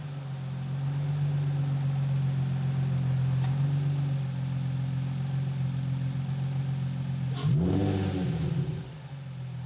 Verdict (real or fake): real